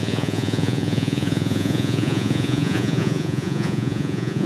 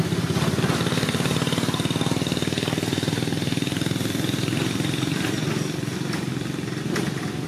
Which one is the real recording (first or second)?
second